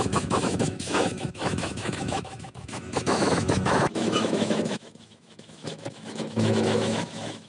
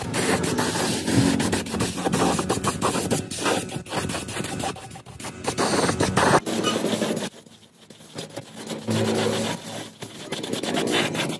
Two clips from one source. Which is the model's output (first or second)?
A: first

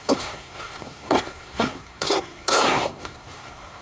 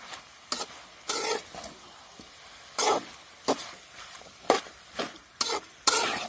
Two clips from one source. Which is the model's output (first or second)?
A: first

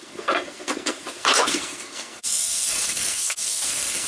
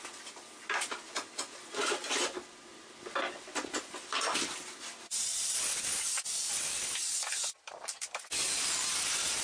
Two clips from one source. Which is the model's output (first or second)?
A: first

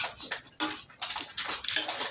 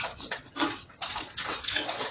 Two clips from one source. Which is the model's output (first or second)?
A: second